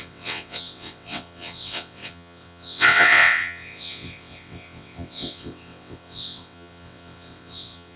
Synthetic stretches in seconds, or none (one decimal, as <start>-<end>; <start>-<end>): 0.0-8.0